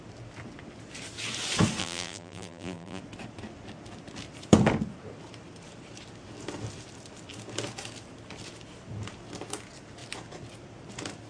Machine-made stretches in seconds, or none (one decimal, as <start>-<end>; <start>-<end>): 1.8-3.0